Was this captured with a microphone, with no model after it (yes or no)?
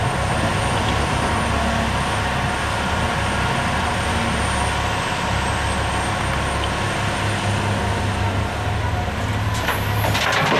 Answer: yes